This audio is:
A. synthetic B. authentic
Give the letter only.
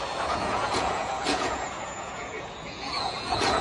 A